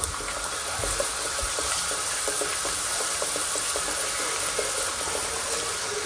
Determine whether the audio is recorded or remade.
recorded